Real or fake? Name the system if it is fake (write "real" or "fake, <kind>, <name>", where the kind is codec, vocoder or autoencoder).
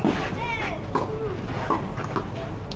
real